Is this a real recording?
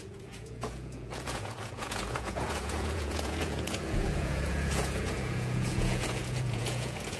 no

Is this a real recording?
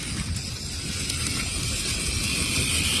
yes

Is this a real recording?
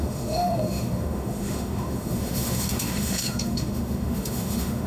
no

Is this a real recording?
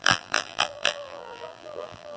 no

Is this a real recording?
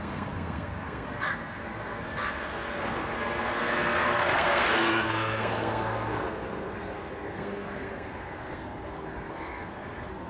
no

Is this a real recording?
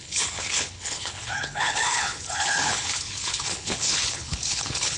no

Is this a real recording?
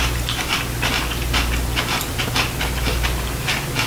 yes